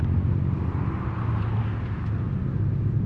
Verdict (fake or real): real